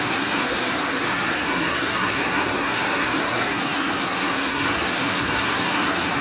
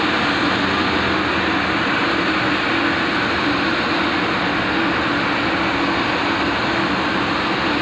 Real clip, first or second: second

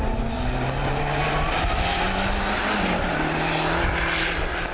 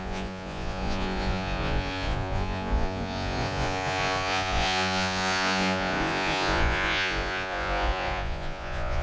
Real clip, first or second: first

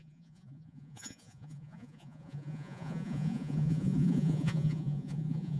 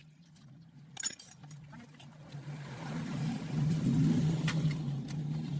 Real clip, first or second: second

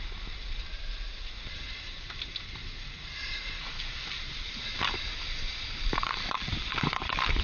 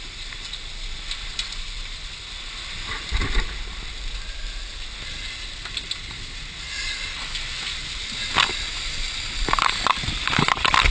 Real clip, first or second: second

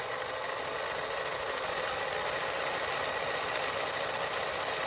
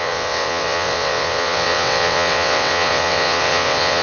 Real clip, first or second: first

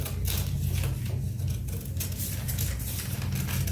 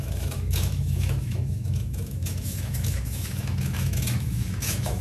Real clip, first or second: first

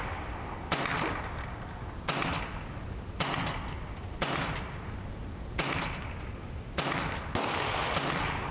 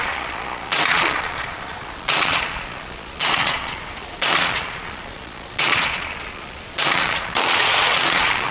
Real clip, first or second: first